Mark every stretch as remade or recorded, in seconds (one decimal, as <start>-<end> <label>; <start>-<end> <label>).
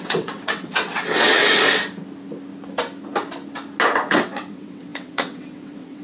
0.0-1.4 remade; 1.4-4.1 recorded; 4.1-6.0 remade